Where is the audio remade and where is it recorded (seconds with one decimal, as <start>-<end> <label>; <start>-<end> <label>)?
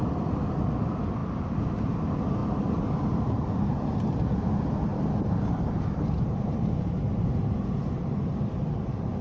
0.0-1.2 recorded; 1.2-2.0 remade; 2.0-4.9 recorded; 4.9-7.6 remade; 7.6-9.2 recorded